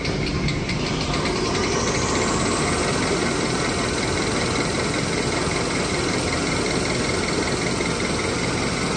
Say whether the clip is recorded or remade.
recorded